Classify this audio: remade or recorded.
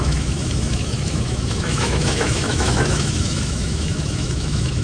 remade